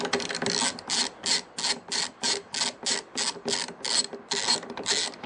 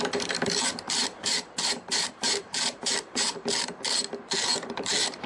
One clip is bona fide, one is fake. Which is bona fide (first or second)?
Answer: first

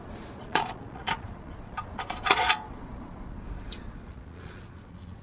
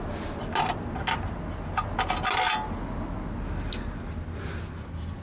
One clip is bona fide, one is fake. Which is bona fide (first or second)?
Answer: second